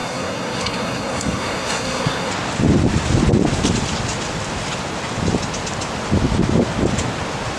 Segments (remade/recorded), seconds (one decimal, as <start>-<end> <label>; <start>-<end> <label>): 0.0-2.3 remade; 2.3-7.6 recorded